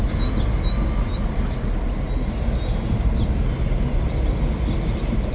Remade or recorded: recorded